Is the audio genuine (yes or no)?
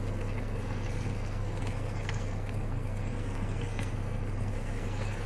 no